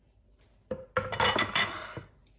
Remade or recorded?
recorded